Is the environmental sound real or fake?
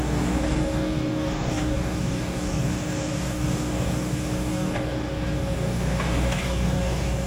fake